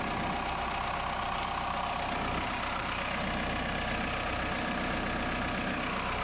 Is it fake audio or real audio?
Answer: real